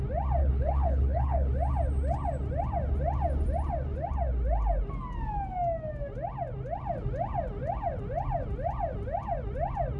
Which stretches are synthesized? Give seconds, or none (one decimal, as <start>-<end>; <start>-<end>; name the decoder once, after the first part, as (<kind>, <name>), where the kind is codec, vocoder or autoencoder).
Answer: 0.4-1.5 (codec, HILCodec)